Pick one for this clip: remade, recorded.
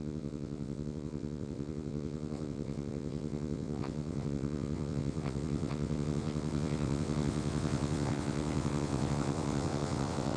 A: remade